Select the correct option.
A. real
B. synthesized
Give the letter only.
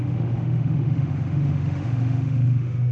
B